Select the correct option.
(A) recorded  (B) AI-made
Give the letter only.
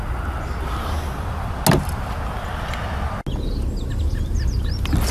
A